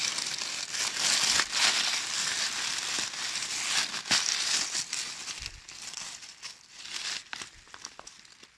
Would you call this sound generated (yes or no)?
no